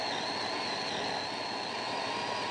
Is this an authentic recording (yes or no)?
yes